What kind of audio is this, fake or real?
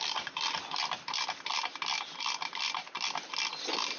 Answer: real